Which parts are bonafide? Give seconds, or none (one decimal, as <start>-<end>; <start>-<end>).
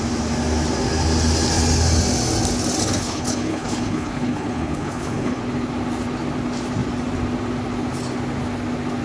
0.0-2.8; 5.4-9.0